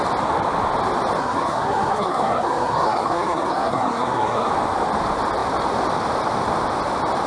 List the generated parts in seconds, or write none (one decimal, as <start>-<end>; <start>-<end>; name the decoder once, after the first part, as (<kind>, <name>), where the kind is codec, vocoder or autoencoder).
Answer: 1.2-4.5 (codec, SNAC)